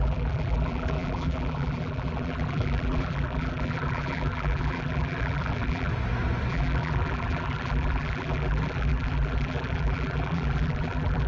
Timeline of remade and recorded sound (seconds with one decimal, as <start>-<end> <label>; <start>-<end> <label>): 0.0-5.9 remade; 5.9-6.5 recorded; 6.5-11.3 remade